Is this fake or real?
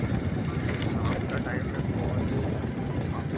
real